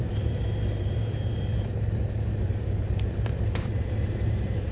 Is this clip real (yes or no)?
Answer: no